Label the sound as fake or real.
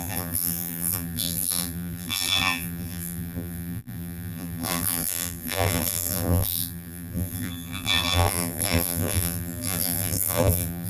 fake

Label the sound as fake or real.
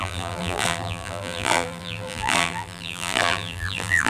fake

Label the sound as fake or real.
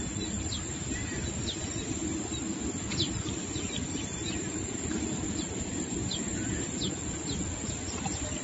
real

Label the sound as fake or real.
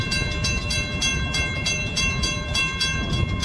fake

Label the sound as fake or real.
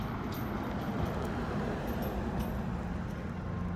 real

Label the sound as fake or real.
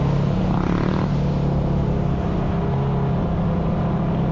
real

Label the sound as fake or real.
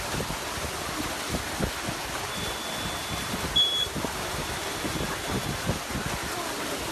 real